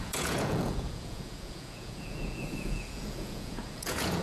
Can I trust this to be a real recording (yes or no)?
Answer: no